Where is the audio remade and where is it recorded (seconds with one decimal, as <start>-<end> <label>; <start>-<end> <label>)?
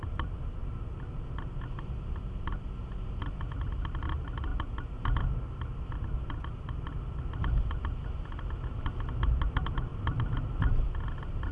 0.0-11.5 recorded